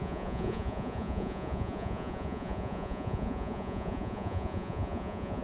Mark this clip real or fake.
fake